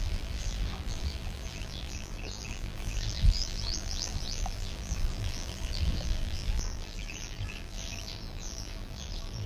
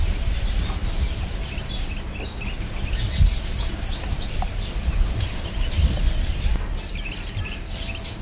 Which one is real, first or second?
second